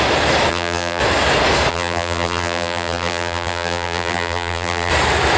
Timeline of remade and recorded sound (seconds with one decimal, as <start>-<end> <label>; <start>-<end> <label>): 0.0-0.5 recorded; 0.5-1.0 remade; 1.0-1.7 recorded; 1.7-4.9 remade; 4.9-5.4 recorded

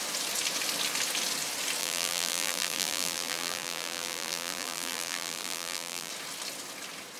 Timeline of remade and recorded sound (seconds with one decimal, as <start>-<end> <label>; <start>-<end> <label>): 0.0-1.8 recorded; 1.8-6.1 remade; 6.1-7.2 recorded

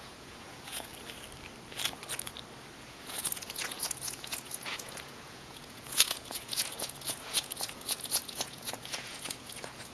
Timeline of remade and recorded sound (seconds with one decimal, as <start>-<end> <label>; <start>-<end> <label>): 0.0-0.9 remade; 0.9-2.8 recorded; 2.8-9.9 remade

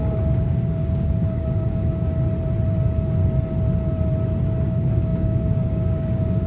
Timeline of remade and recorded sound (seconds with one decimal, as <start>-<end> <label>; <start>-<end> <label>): 0.0-2.1 remade; 2.1-2.7 recorded; 2.7-3.2 remade; 3.2-4.6 recorded; 4.6-6.5 remade

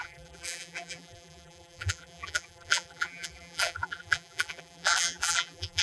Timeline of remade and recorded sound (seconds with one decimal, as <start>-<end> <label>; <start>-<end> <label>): 0.0-5.8 remade

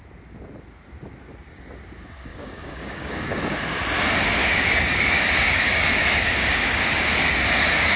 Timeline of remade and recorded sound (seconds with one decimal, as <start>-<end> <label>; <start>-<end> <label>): 0.0-2.3 recorded; 2.3-3.4 remade; 3.4-4.4 recorded; 4.4-6.9 remade; 6.9-8.0 recorded